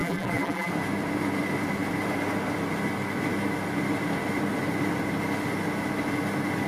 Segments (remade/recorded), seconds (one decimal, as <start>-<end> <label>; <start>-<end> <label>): 0.0-0.7 remade; 0.7-6.7 recorded